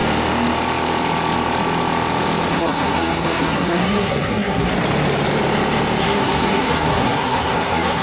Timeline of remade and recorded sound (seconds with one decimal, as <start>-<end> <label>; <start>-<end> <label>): 0.0-2.5 recorded; 2.5-4.7 remade; 4.7-6.0 recorded; 6.0-8.0 remade